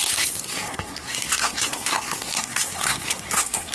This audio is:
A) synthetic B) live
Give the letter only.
A